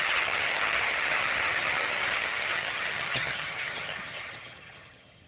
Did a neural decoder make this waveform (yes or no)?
yes